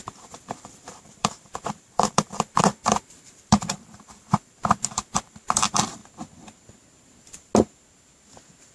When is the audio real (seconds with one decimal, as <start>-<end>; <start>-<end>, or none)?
6.0-8.7

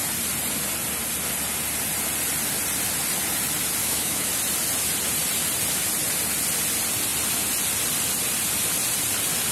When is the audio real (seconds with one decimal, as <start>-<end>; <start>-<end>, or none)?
0.0-3.8; 4.3-9.5

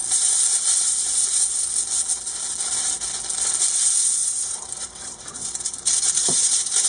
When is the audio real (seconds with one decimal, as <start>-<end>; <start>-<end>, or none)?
0.0-4.2

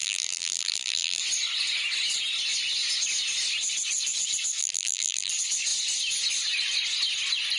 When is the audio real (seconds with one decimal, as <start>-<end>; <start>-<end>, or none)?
1.2-4.6; 5.3-7.6

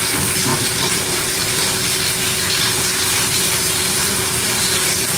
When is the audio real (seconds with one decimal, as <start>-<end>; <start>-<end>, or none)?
0.0-0.5; 1.3-5.2

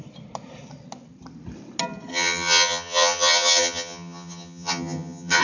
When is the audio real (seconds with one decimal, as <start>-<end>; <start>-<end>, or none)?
0.0-2.1

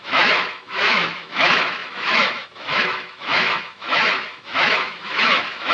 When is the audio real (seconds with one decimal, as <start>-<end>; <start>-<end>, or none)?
none

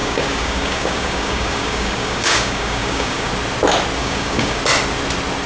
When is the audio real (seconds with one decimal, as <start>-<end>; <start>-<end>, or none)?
3.3-4.0; 4.6-5.5